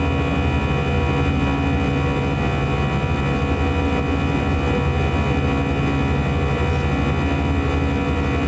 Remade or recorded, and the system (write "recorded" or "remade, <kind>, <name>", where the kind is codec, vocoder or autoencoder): recorded